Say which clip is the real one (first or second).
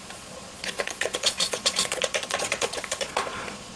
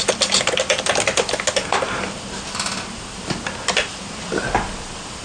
second